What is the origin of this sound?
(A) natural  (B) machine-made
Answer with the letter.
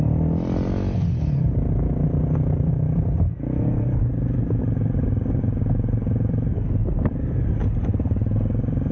A